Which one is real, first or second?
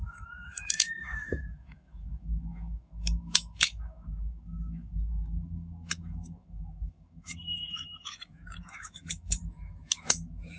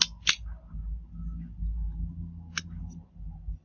second